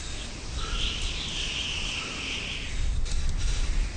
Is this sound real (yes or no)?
yes